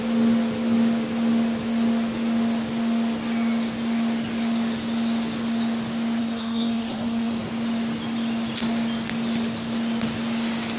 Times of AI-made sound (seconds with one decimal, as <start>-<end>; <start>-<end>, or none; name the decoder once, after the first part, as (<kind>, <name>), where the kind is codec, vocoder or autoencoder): 6.2-7.5 (codec, SNAC)

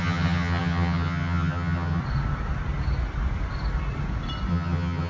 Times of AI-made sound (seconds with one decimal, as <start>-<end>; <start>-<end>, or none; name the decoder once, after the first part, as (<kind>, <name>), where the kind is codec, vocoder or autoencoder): 0.0-2.0 (vocoder, HiFi-GAN); 4.5-5.1

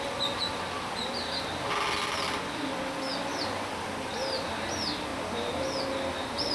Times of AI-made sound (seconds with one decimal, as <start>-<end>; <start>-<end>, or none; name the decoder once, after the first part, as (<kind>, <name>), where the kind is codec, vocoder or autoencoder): none

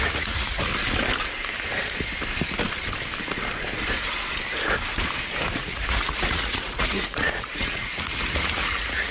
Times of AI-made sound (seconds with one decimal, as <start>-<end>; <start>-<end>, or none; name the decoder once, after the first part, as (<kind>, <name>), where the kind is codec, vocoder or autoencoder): 0.0-0.7 (vocoder, Vocos); 5.5-9.1

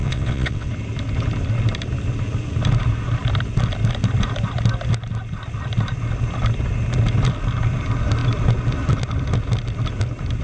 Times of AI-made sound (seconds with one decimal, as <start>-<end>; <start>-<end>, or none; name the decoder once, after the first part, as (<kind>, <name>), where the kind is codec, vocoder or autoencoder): 0.0-0.7 (vocoder, WaveNeXt)

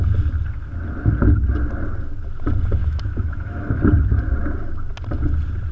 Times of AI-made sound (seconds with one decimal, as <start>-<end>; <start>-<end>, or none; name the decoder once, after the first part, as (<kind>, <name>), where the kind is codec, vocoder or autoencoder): 2.8-3.8 (autoencoder, DAC-VAE)

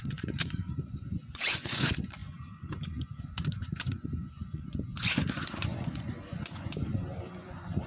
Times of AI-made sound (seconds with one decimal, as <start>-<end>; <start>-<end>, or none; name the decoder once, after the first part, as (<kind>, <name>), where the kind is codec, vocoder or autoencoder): 0.0-7.9 (vocoder, Vocos)

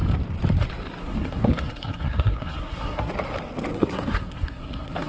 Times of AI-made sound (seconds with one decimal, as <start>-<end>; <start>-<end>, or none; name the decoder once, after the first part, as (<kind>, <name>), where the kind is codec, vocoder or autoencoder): 1.0-3.1 (codec, SNAC); 3.7-5.1